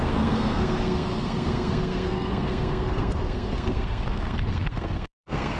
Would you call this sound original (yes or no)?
no